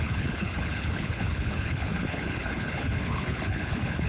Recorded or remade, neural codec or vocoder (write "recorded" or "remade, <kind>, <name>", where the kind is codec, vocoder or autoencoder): remade, codec, HILCodec